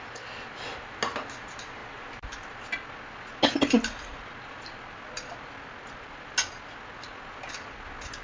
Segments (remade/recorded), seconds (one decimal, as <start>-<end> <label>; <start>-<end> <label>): 0.0-8.2 recorded